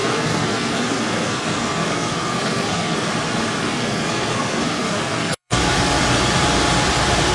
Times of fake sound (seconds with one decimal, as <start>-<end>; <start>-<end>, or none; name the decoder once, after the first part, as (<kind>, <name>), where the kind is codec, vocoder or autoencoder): 0.0-3.1 (codec, SNAC); 3.6-5.6